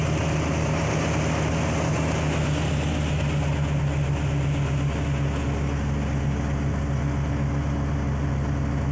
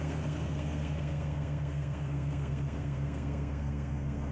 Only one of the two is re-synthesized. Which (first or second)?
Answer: second